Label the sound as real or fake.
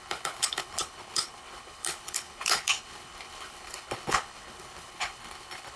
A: fake